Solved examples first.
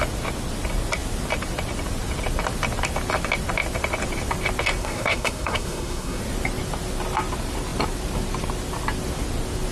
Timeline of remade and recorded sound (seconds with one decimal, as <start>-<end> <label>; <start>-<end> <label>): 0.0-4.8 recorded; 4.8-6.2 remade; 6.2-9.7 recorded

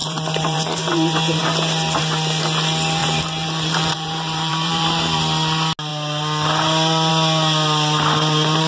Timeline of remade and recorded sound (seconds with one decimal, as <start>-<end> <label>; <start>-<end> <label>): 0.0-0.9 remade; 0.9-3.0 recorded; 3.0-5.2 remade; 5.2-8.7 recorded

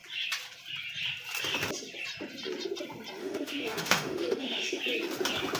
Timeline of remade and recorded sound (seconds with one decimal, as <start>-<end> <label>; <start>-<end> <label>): 0.0-3.2 recorded; 3.2-4.8 remade; 4.8-5.6 recorded